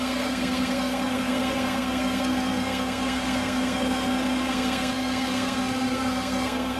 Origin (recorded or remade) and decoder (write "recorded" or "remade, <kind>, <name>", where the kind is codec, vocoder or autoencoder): remade, codec, SNAC